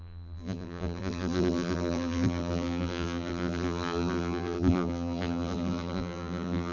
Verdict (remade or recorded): remade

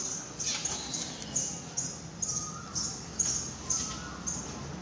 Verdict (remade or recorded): recorded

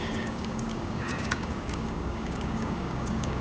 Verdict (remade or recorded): remade